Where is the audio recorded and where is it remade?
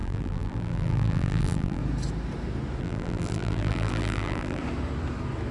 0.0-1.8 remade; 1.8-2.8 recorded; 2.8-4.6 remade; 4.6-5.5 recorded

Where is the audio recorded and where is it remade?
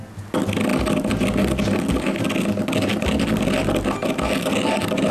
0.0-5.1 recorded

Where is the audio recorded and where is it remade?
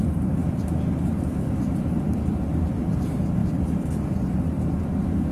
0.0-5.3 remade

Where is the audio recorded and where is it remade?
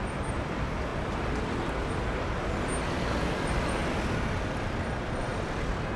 0.0-0.9 remade; 0.9-3.4 recorded; 3.4-3.8 remade; 3.8-4.4 recorded; 4.4-5.3 remade; 5.3-6.0 recorded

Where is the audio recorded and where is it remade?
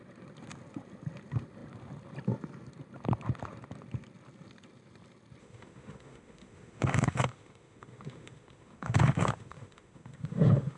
0.0-5.4 recorded; 5.4-10.8 remade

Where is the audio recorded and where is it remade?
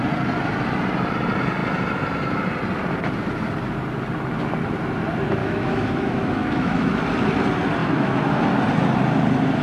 0.0-5.4 recorded; 5.4-6.9 remade; 6.9-7.8 recorded; 7.8-8.4 remade; 8.4-9.6 recorded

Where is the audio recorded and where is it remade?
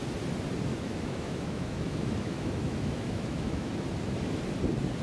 0.0-0.7 recorded; 0.7-3.7 remade; 3.7-5.0 recorded